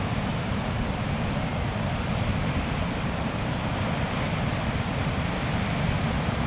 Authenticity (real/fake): fake